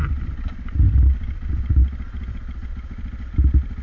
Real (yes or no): yes